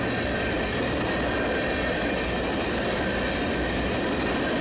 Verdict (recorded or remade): recorded